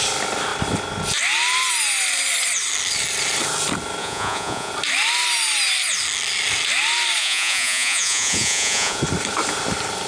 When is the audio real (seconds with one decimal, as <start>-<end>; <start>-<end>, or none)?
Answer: 0.0-4.0; 4.7-7.2; 9.0-10.1